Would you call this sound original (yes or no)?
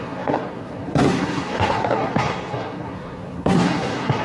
no